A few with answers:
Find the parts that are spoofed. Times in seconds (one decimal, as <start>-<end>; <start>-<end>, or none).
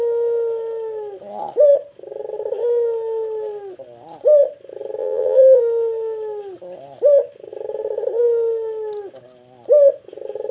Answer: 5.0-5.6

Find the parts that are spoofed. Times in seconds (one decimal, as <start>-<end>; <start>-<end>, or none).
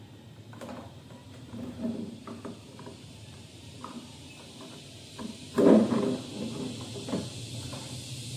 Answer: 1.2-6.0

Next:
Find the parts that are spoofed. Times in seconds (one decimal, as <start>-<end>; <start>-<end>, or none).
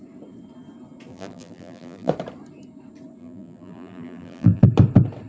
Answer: 1.1-2.1; 3.2-4.6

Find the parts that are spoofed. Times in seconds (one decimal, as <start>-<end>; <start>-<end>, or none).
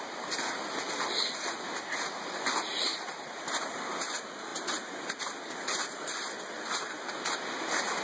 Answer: 2.9-3.5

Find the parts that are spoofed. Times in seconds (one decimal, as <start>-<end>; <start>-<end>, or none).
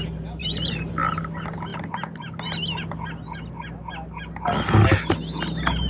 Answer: 0.4-0.9